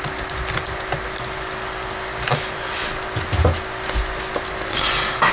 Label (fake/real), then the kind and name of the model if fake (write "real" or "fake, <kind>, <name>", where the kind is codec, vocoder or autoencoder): real